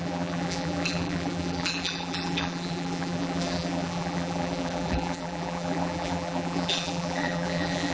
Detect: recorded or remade remade